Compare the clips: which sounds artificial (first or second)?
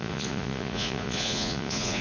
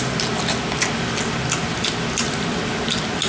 first